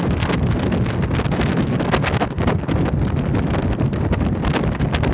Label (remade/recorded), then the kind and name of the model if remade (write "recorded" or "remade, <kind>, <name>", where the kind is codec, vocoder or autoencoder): recorded